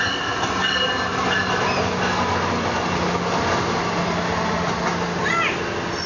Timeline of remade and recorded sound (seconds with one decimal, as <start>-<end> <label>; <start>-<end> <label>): 0.0-6.1 recorded